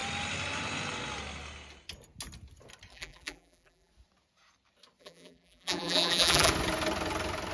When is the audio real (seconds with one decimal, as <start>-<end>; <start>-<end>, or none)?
0.0-2.9; 3.9-5.0; 6.5-7.5